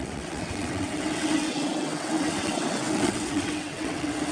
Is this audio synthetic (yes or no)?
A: yes